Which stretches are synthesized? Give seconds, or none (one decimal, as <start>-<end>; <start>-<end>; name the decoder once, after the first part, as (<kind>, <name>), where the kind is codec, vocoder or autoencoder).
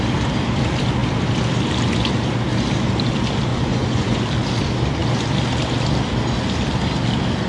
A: 3.5-4.2 (vocoder, Vocos)